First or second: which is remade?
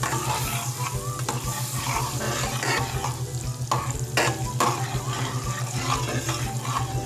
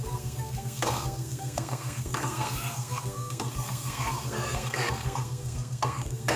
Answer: second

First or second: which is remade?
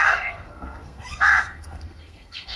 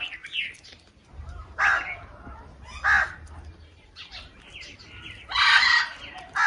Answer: first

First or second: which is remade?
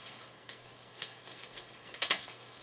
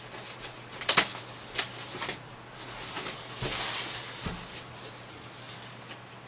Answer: first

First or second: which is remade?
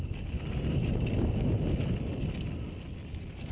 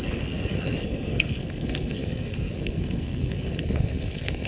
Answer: second